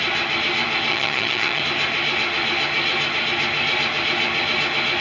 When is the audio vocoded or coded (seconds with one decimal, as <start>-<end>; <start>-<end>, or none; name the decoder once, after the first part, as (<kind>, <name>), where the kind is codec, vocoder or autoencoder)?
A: 0.9-1.6 (vocoder, HiFi-GAN)